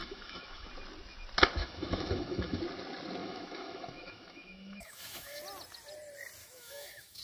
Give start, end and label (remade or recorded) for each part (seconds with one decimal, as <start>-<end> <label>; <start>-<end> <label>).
0.0-0.7 remade; 0.7-1.6 recorded; 1.6-2.6 remade; 2.6-3.2 recorded; 3.2-5.4 remade; 5.4-6.4 recorded; 6.4-7.2 remade